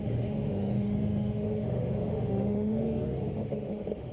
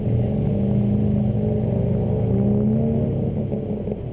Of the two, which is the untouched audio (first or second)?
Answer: second